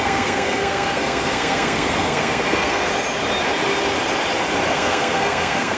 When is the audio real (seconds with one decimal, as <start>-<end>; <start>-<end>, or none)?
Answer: 2.9-4.7